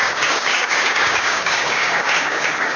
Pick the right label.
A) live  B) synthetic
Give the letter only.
B